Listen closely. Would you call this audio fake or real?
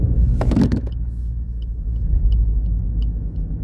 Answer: fake